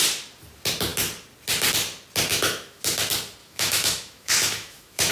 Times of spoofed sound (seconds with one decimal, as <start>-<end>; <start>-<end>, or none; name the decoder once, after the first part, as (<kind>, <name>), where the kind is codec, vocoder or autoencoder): 2.3-2.8 (autoencoder, DAC-VAE); 3.4-5.1